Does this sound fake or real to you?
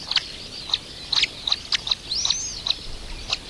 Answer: real